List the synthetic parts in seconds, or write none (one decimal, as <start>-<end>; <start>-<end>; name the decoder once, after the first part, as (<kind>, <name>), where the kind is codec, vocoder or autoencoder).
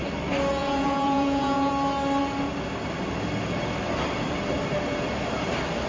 0.6-1.7 (vocoder, Vocos)